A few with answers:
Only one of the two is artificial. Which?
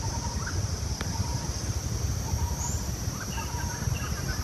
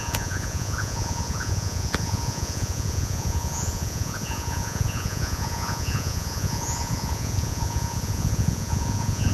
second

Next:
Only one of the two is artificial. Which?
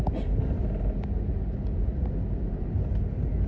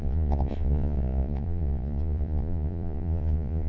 second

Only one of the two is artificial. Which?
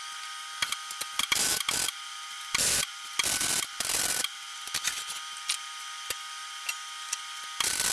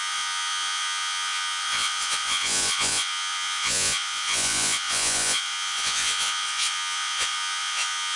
second